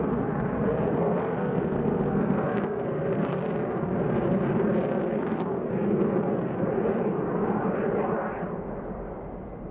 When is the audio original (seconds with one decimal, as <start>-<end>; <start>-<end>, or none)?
0.0-0.9; 3.4-5.0; 5.7-9.7